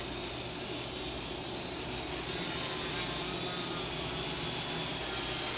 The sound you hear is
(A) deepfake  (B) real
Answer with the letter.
B